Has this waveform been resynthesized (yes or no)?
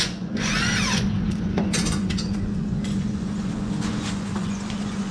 yes